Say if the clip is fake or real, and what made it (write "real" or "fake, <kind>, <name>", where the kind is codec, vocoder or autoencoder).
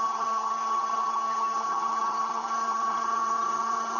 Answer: fake, vocoder, HiFi-GAN